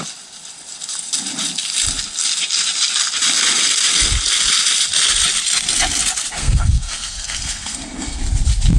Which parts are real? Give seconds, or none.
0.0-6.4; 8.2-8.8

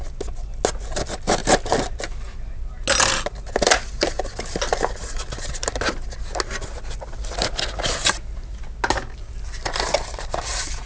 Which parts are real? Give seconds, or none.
0.0-10.9

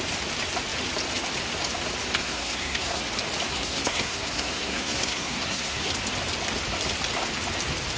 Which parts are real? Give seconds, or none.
0.0-2.2; 3.0-3.5; 5.9-8.0

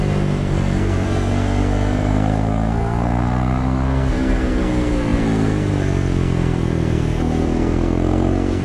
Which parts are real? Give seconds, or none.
none

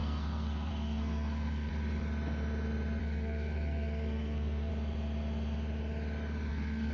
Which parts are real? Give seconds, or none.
1.7-3.0; 4.7-6.5

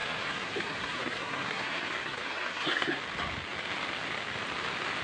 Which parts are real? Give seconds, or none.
3.0-5.0

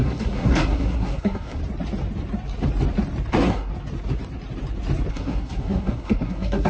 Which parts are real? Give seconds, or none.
1.6-3.3; 3.7-5.1